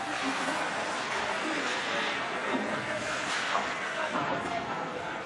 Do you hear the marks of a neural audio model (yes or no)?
yes